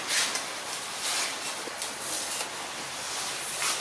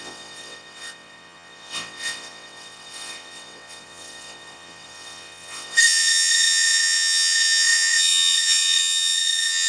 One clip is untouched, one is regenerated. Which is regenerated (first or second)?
second